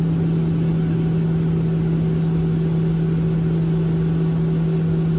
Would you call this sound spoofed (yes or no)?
no